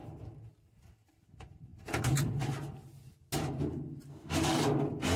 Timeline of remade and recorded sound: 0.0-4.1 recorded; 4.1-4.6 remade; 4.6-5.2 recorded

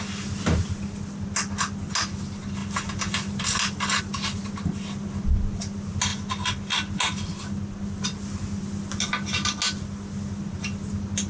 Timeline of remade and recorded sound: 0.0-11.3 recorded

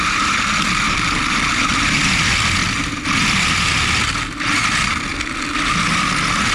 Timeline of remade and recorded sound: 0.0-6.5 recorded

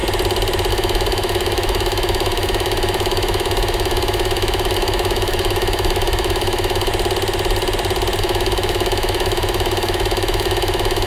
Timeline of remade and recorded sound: 0.0-0.7 recorded; 0.7-6.9 remade; 6.9-8.2 recorded; 8.2-11.1 remade

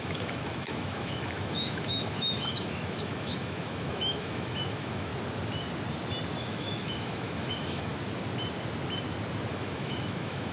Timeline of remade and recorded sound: 0.0-5.1 remade; 5.1-6.4 recorded; 6.4-7.9 remade; 7.9-9.5 recorded; 9.5-10.5 remade